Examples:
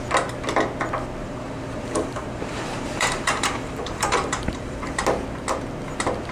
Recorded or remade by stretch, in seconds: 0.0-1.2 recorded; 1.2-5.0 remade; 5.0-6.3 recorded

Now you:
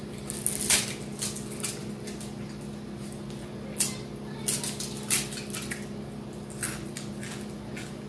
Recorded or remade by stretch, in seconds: 0.0-8.1 recorded

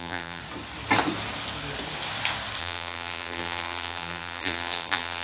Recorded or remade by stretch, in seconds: 0.0-0.4 remade; 0.4-2.6 recorded; 2.6-5.2 remade

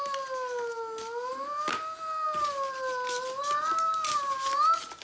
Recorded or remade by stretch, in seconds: 0.0-5.0 recorded

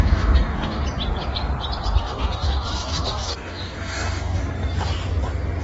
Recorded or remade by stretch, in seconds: 0.0-0.8 remade; 0.8-2.0 recorded; 2.0-4.4 remade; 4.4-5.6 recorded